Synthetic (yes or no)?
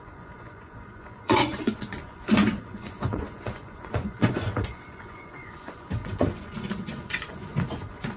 yes